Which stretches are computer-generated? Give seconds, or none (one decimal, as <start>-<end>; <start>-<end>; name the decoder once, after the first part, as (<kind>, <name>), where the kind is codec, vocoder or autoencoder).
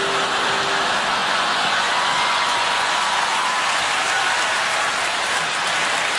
1.2-3.8 (vocoder, Vocos)